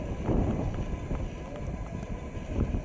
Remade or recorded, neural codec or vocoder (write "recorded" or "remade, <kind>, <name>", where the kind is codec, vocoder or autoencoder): recorded